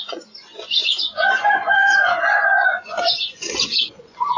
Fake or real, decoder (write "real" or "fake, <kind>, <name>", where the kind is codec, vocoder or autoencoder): fake, vocoder, Vocos